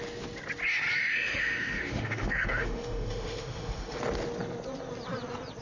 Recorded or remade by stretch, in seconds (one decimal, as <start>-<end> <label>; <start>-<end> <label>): 0.0-1.0 recorded; 1.0-4.0 remade; 4.0-5.6 recorded